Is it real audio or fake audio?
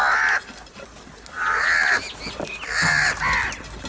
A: real